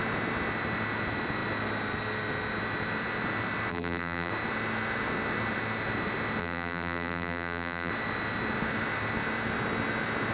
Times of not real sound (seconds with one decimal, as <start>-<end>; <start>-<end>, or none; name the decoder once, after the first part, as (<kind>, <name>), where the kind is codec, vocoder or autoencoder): 3.7-4.3 (vocoder, BigVGAN v2); 6.4-7.9